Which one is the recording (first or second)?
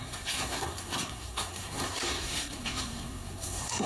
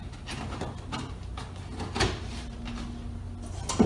second